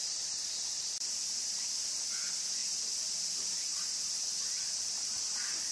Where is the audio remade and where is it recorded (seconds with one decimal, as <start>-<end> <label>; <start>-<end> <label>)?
0.0-2.6 remade; 2.6-3.2 recorded; 3.2-5.7 remade